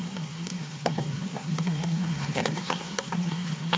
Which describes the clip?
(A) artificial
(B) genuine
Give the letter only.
A